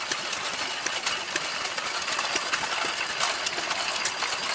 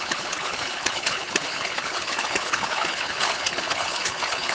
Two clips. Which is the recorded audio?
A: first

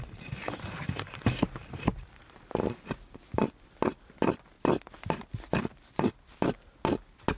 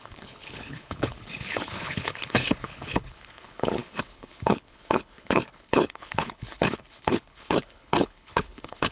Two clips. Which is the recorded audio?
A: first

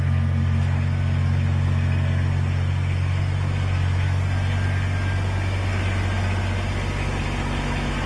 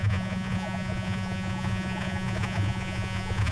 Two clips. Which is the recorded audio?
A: first